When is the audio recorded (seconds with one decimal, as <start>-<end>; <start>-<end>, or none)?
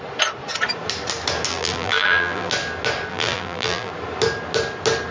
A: 0.0-1.5; 2.5-3.1; 3.9-5.1